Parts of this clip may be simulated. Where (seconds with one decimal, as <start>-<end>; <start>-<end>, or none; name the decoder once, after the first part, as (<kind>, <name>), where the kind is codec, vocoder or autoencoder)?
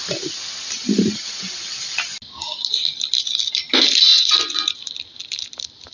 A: none